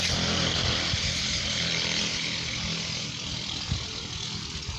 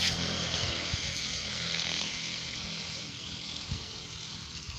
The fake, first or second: second